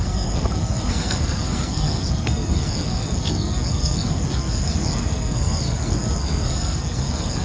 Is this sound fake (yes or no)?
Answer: yes